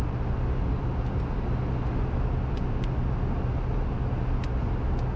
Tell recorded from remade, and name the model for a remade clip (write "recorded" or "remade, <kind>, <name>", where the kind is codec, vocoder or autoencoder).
recorded